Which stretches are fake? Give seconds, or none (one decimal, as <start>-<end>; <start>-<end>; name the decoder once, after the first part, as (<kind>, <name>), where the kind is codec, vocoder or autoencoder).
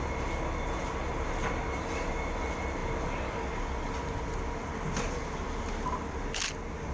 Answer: none